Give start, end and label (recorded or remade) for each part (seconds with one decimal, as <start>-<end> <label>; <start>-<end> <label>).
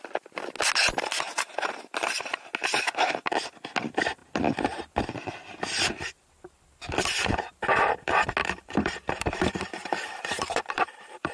0.0-8.4 recorded; 8.4-11.3 remade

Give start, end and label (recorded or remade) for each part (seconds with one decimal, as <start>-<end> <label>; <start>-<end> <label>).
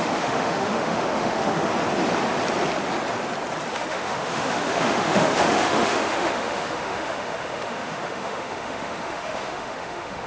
0.0-1.7 remade; 1.7-3.7 recorded; 3.7-10.3 remade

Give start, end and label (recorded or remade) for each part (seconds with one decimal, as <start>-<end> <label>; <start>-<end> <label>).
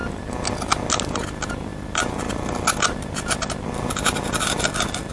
0.0-5.1 recorded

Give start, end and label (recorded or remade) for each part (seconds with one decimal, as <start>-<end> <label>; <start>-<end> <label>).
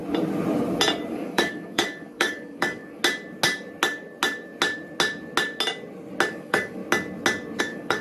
0.0-1.1 recorded; 1.1-3.0 remade; 3.0-6.3 recorded; 6.3-6.8 remade; 6.8-7.6 recorded; 7.6-8.0 remade